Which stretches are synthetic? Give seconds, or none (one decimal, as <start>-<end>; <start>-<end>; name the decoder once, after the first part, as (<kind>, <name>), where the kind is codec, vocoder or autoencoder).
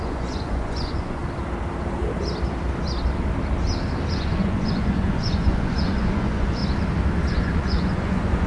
0.0-1.2 (vocoder, Vocos); 4.1-6.6; 7.3-8.5